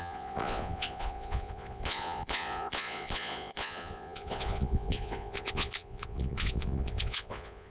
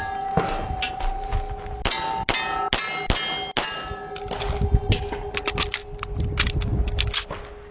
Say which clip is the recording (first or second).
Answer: second